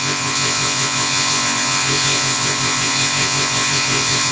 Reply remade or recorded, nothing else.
remade